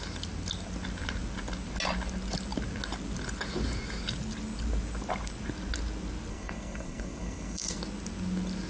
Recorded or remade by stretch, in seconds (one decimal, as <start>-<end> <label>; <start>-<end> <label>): 0.0-6.3 recorded; 6.3-7.8 remade; 7.8-8.7 recorded